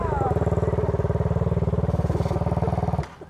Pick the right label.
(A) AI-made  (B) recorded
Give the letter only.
B